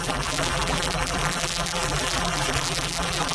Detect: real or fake fake